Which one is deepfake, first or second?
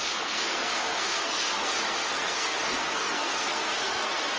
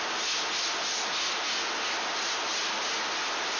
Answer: first